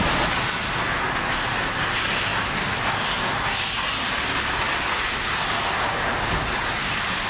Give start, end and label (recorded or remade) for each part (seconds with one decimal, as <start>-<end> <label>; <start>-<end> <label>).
0.0-7.3 recorded